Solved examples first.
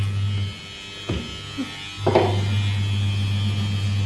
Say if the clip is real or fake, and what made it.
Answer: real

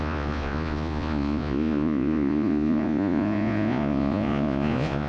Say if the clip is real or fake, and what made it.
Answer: fake, vocoder, Vocos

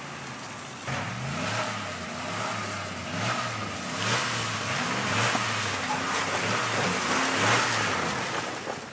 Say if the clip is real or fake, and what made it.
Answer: real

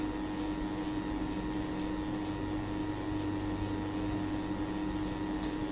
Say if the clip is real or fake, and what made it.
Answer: real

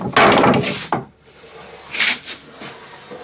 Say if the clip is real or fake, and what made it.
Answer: real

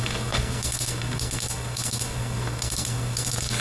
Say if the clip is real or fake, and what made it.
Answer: fake, codec, SNAC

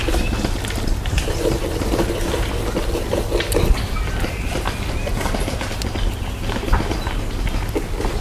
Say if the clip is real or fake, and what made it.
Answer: real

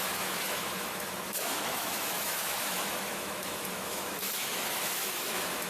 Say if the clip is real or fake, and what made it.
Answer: fake, autoencoder, DAC-VAE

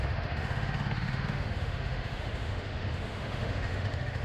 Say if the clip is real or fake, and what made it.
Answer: fake, autoencoder, DAC-VAE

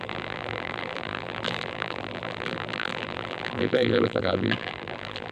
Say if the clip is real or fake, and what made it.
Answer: fake, vocoder, BigVGAN v2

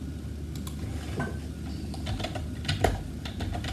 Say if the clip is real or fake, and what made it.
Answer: real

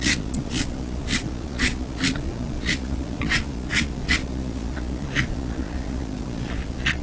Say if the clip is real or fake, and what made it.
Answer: fake, vocoder, Vocos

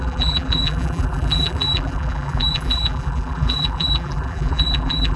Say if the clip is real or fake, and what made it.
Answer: fake, vocoder, BigVGAN v2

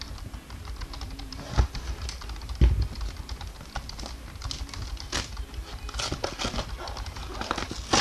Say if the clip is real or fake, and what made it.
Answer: real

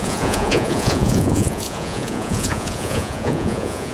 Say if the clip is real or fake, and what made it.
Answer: fake, vocoder, Vocos